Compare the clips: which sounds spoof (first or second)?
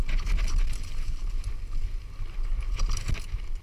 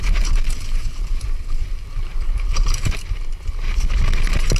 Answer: second